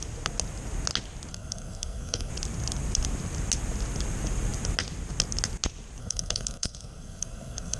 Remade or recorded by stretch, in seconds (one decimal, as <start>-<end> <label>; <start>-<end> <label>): 0.0-1.3 recorded; 1.3-2.3 remade; 2.3-6.0 recorded; 6.0-7.8 remade